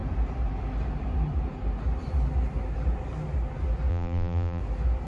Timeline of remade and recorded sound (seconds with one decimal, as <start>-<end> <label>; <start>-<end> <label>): 0.0-3.9 recorded; 3.9-4.6 remade; 4.6-5.1 recorded